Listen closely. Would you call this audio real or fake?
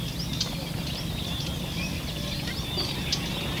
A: real